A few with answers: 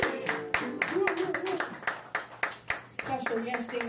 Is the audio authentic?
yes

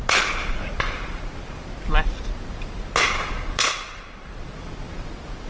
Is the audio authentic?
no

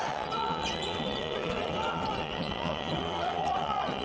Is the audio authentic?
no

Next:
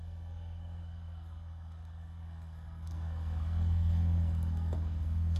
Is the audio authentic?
no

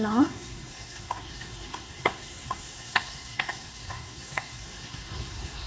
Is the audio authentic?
no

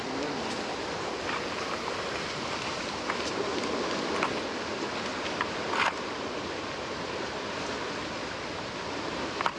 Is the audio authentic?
yes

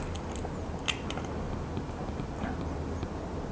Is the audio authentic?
yes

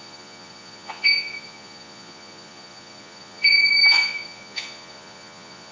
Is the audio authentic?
no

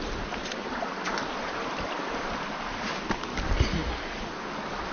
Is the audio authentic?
yes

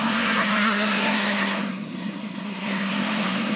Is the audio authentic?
no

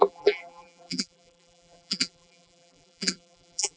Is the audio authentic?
no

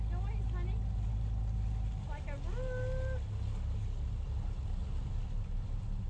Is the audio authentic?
yes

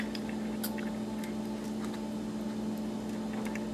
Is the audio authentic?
yes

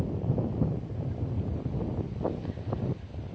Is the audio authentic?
yes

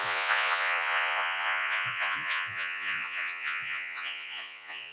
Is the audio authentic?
no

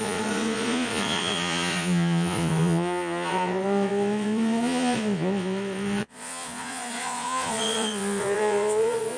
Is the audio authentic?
no